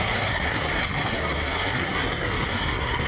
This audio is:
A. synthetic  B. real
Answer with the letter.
A